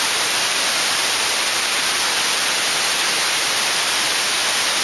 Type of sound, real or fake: real